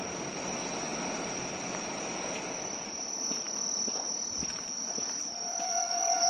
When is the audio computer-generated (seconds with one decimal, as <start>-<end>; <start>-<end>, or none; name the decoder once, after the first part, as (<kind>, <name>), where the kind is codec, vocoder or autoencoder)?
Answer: none